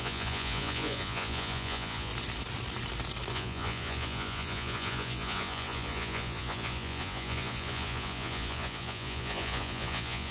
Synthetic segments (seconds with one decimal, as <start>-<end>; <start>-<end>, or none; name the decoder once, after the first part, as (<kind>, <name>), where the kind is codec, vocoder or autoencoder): 0.0-2.1 (vocoder, Vocos); 3.3-10.3